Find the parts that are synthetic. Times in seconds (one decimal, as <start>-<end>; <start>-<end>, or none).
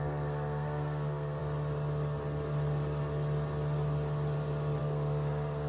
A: 0.0-1.4; 4.8-5.7